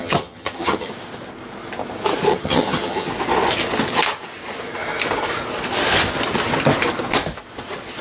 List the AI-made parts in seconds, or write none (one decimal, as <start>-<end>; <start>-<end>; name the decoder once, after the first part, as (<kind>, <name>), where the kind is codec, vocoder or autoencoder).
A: 0.0-0.9 (vocoder, HiFi-GAN); 2.3-3.1